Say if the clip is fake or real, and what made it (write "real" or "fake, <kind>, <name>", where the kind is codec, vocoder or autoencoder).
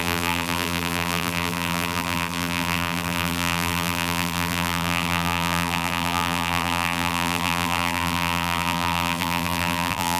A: fake, vocoder, BigVGAN v2